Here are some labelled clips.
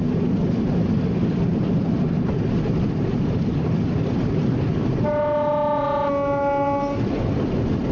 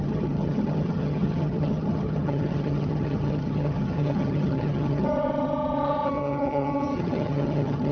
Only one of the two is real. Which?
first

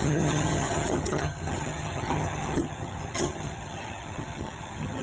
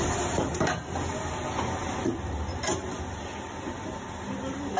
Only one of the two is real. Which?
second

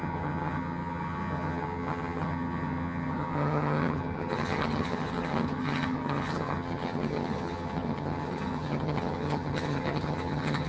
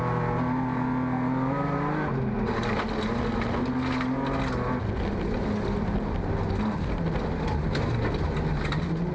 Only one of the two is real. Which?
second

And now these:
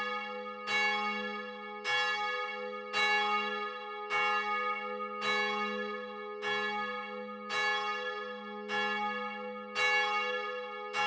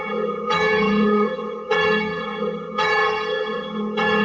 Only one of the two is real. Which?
first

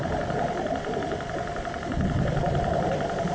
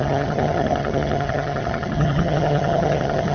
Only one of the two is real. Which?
first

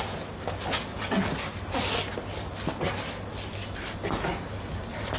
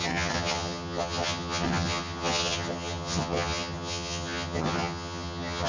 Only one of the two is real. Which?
first